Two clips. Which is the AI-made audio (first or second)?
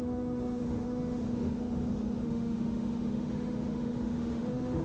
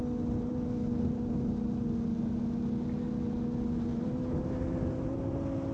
first